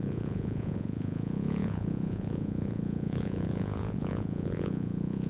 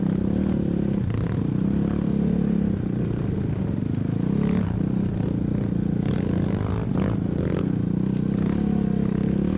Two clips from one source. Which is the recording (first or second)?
second